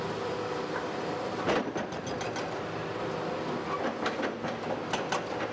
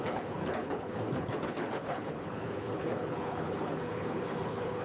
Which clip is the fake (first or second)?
second